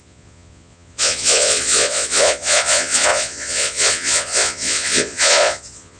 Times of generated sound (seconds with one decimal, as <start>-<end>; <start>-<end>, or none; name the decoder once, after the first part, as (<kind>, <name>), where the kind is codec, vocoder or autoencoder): 0.0-6.0 (vocoder, Vocos)